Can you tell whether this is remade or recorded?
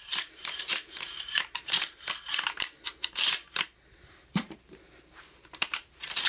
remade